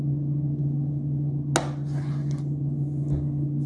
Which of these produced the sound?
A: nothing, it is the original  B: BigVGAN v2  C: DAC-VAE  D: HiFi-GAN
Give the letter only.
A